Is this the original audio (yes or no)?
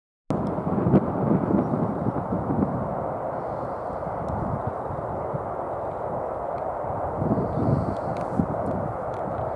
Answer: yes